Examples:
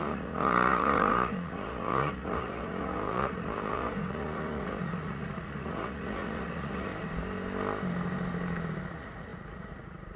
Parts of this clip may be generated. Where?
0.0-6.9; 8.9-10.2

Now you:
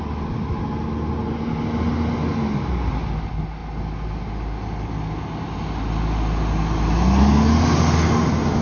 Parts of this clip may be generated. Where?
none

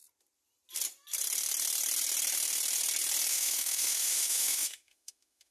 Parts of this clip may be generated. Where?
3.3-5.5

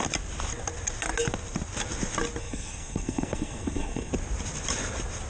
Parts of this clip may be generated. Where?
2.4-4.1